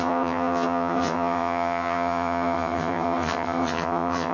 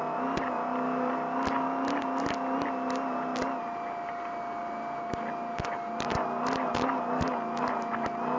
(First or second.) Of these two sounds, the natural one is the second